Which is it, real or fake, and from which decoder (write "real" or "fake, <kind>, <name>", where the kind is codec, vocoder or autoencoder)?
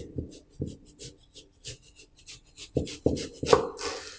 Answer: real